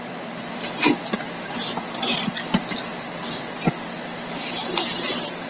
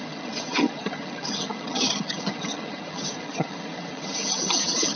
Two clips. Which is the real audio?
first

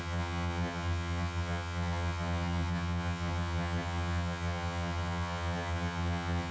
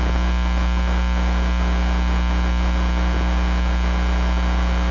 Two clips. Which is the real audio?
second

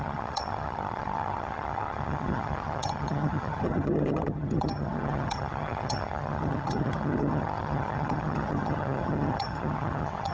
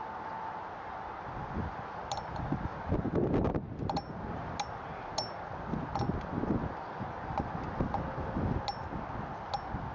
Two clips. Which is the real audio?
second